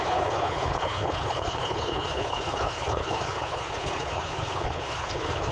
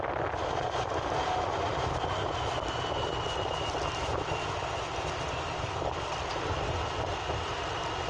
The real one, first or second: second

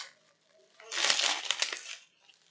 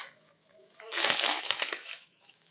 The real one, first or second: first